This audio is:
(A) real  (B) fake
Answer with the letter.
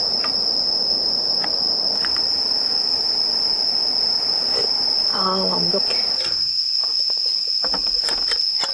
A